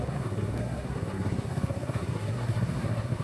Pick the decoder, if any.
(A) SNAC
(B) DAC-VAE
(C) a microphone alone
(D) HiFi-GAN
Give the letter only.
A